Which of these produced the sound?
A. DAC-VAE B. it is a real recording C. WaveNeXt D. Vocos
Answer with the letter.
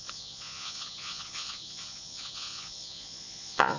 D